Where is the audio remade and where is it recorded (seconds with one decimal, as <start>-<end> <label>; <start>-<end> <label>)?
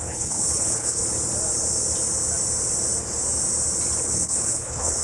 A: 0.0-1.0 remade; 1.0-4.0 recorded; 4.0-5.0 remade